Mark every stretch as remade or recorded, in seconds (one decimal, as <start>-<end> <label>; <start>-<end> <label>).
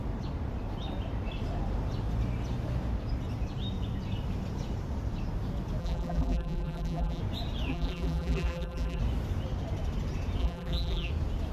0.0-5.8 recorded; 5.8-7.2 remade; 7.2-7.7 recorded; 7.7-9.0 remade; 9.0-10.4 recorded; 10.4-11.1 remade; 11.1-11.5 recorded